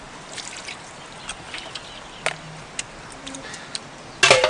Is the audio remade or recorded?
recorded